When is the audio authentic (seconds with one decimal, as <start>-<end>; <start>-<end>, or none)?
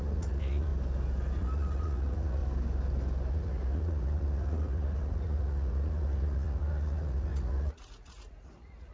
0.7-1.4; 2.4-3.3